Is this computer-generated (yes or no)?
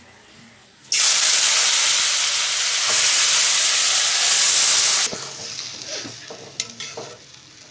no